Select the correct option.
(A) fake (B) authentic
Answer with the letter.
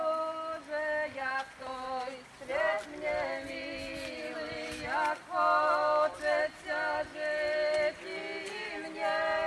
B